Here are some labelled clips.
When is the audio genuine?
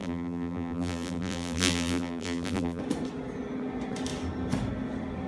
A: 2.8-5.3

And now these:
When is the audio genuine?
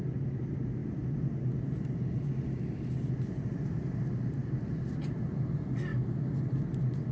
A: 0.0-7.1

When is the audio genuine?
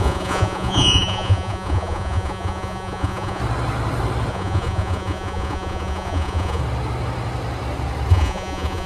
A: 3.4-4.3; 6.6-8.1